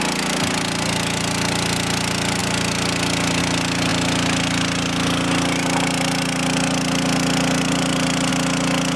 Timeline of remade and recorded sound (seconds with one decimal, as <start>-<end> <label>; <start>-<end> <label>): 0.0-9.0 recorded